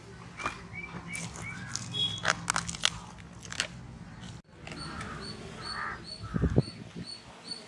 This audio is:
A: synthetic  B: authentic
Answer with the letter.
B